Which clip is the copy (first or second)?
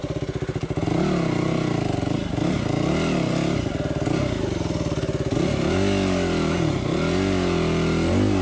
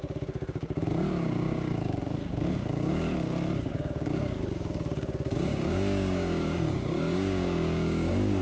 second